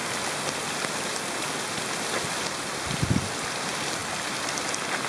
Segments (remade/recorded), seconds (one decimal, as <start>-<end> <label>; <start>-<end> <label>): 0.0-5.1 recorded